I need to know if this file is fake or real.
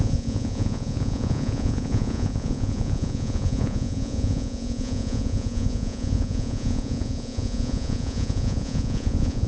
fake